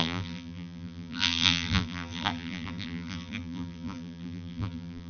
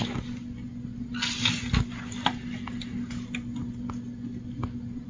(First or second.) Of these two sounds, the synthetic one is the first